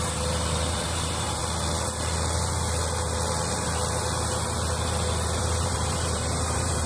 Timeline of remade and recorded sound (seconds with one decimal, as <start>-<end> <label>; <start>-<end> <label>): 0.0-1.4 remade; 1.4-5.4 recorded; 5.4-6.9 remade